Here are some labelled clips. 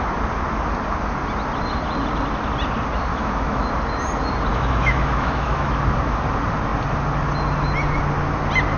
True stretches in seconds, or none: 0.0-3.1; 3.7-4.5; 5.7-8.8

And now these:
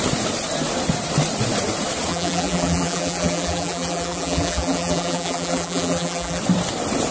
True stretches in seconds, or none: 0.0-2.1; 6.4-7.1

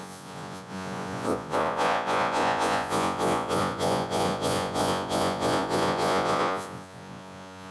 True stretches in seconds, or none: none